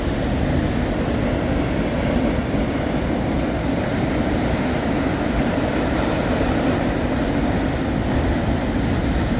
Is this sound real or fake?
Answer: real